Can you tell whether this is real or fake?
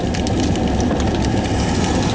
real